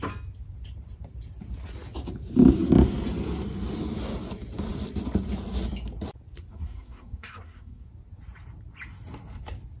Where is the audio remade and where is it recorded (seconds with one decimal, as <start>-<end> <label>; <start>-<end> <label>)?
0.0-6.5 recorded; 6.5-7.9 remade; 7.9-9.8 recorded